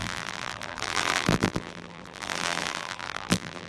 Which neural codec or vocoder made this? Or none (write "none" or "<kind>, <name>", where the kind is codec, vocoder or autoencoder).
vocoder, BigVGAN v2